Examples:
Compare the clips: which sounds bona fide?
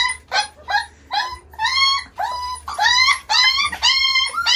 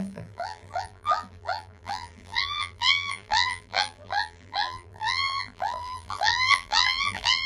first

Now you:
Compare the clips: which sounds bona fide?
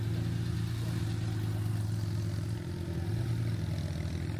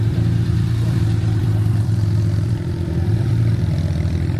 first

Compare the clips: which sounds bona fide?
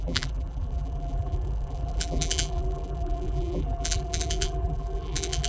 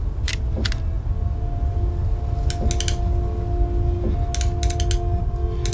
second